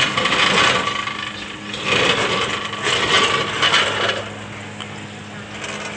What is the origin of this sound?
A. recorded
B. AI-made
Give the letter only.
A